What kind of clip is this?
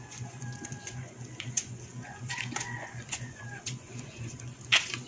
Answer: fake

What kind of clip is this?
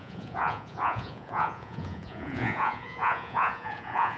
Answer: fake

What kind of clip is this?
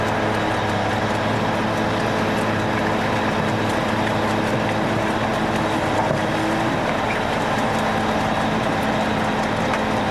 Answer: real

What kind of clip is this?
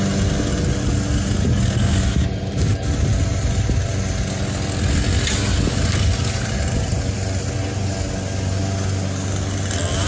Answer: real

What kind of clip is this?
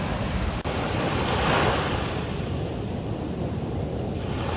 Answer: real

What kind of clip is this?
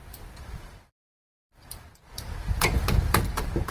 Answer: fake